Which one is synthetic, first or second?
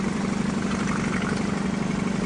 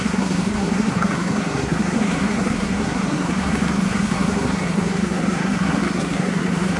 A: second